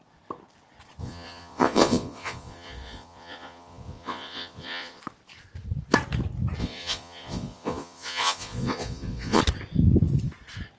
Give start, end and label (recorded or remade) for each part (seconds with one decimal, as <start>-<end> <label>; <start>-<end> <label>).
0.0-1.0 recorded; 1.0-5.0 remade; 5.0-6.6 recorded; 6.6-9.4 remade; 9.4-10.8 recorded